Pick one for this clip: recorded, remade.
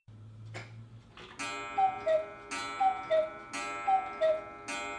recorded